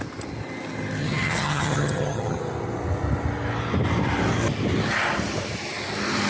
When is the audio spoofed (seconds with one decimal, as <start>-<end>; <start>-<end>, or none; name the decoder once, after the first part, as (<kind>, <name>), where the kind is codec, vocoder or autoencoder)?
1.0-2.4 (vocoder, HiFi-GAN)